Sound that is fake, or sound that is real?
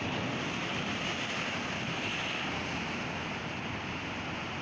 real